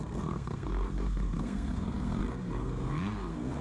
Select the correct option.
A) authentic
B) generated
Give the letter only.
B